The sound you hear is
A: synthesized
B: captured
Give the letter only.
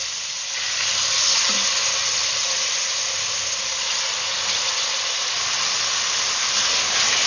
B